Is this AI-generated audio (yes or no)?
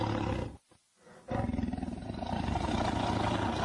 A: no